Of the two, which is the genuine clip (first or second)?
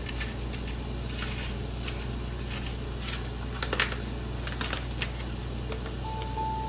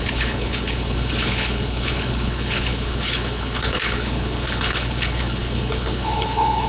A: first